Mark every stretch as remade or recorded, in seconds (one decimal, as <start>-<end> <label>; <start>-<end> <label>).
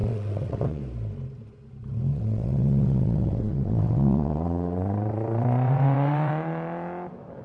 0.0-0.8 remade; 0.8-2.1 recorded; 2.1-6.3 remade; 6.3-7.4 recorded